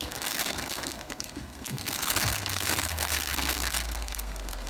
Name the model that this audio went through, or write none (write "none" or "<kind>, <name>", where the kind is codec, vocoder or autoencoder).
codec, SNAC